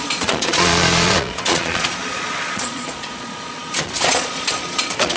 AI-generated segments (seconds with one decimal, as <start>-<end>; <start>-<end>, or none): 0.0-5.2